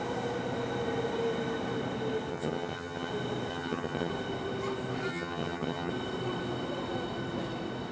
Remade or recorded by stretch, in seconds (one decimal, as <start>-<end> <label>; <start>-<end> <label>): 0.0-2.3 recorded; 2.3-3.1 remade; 3.1-3.5 recorded; 3.5-4.1 remade; 4.1-5.1 recorded; 5.1-5.9 remade; 5.9-7.9 recorded